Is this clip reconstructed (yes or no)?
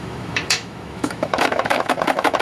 yes